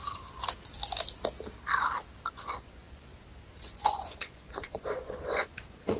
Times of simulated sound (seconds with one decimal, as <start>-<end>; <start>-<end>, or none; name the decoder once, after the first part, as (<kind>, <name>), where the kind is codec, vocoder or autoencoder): 2.3-3.1 (vocoder, Vocos); 3.6-6.0